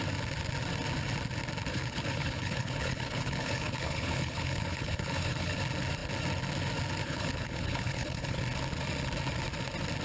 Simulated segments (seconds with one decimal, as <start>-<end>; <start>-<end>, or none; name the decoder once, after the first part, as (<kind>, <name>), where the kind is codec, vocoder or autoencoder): 1.7-5.6 (codec, HILCodec); 7.0-8.4